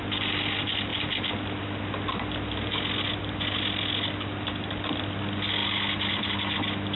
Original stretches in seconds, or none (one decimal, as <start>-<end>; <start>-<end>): 0.0-7.0